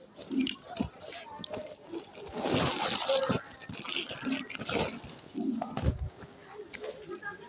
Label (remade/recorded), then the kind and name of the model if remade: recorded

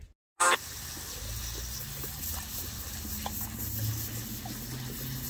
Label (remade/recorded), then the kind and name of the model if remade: recorded